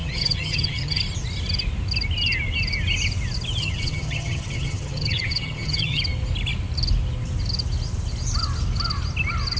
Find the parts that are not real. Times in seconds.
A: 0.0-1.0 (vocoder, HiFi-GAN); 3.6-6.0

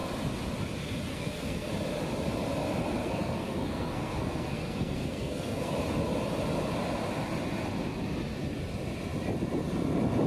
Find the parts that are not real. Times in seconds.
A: 1.1-1.7 (codec, SNAC); 3.0-5.7

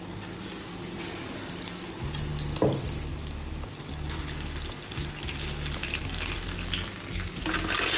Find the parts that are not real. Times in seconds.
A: none

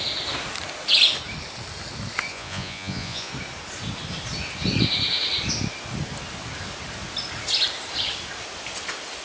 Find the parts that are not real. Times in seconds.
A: 2.3-3.3 (vocoder, Vocos)

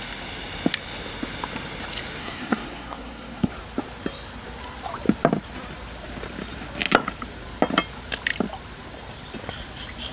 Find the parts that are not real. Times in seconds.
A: 2.2-3.5 (codec, SNAC)

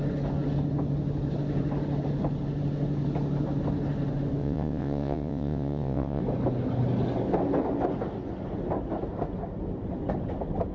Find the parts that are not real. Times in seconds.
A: 4.4-6.2 (vocoder, WaveNeXt)

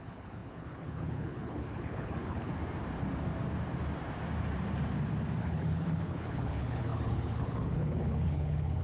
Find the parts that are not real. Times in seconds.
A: 0.0-2.5 (codec, HILCodec); 5.4-8.8

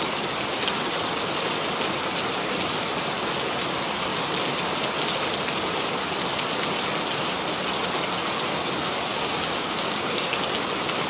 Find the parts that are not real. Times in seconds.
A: 9.1-10.4 (codec, DAC)